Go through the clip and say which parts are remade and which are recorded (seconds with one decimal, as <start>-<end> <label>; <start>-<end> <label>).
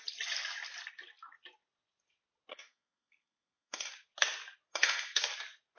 0.0-2.5 recorded; 2.5-3.9 remade; 3.9-4.7 recorded; 4.7-5.2 remade; 5.2-5.8 recorded